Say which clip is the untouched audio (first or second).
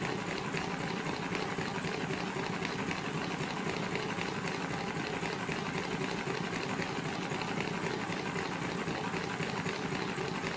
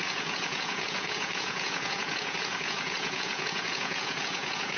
first